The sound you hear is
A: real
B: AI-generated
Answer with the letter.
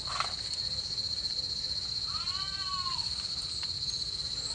B